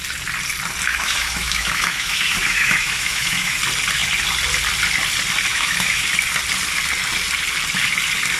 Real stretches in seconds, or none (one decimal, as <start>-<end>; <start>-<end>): 0.0-0.9; 3.6-5.5; 6.1-8.4